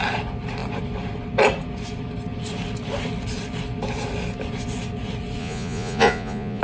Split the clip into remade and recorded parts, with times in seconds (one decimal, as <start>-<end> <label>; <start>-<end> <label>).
0.0-5.4 recorded; 5.4-6.6 remade